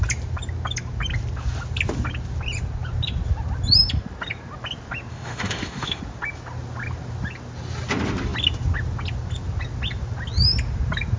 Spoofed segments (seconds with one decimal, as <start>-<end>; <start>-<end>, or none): 5.1-6.0